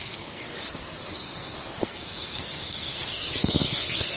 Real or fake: fake